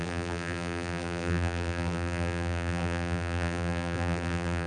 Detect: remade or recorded remade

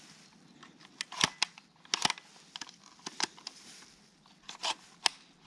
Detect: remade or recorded recorded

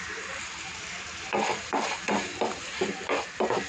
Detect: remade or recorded remade